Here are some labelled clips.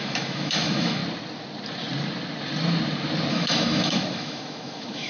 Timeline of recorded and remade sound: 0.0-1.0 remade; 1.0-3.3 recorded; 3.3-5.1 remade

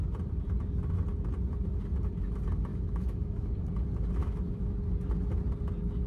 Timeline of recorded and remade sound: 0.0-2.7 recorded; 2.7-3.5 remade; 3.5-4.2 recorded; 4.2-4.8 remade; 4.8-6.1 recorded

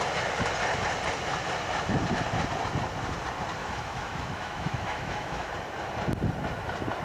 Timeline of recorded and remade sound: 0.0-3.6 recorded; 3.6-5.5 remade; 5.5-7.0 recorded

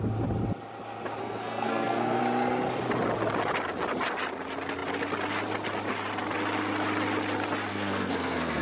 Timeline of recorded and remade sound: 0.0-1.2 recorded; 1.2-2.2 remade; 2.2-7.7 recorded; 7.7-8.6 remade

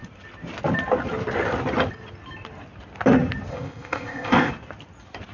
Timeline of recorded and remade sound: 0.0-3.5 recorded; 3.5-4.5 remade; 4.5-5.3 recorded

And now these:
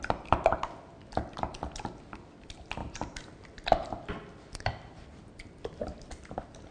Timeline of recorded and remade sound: 0.0-2.8 recorded; 2.8-4.1 remade; 4.1-6.7 recorded

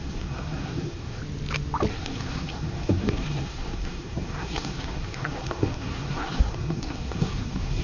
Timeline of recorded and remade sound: 0.0-1.2 remade; 1.2-1.9 recorded; 1.9-7.8 remade

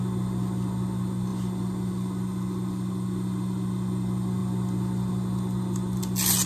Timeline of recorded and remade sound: 0.0-6.5 recorded